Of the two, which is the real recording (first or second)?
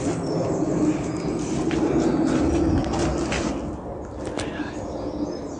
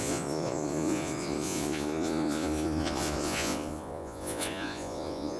first